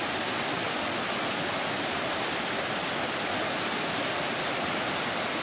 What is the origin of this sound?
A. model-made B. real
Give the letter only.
B